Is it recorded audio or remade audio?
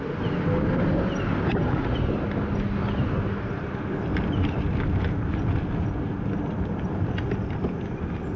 recorded